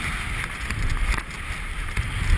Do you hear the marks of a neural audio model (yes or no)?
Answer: no